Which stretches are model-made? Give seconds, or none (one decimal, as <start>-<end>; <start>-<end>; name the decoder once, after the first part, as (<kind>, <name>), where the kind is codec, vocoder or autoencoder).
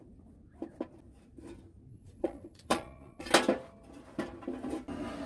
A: 1.9-3.3 (vocoder, Vocos)